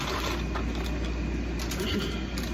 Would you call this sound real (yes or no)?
yes